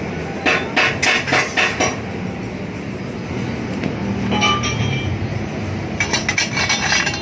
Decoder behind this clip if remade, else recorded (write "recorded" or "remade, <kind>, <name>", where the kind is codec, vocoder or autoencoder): recorded